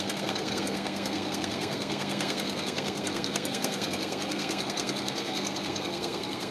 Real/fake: fake